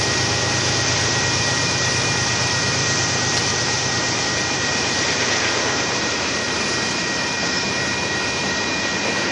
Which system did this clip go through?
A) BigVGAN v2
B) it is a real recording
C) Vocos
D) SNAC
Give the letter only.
A